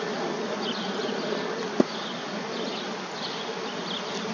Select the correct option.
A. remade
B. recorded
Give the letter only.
B